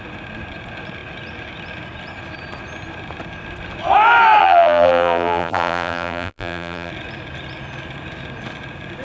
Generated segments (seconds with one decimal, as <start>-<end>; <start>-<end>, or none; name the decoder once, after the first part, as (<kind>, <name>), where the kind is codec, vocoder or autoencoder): 4.4-6.9 (vocoder, BigVGAN v2)